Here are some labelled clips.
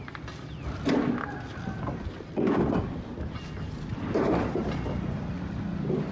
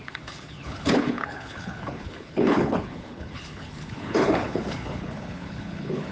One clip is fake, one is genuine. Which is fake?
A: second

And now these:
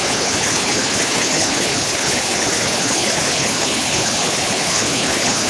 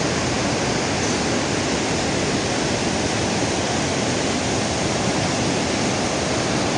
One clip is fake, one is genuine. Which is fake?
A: first